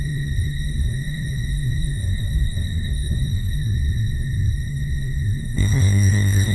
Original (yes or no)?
no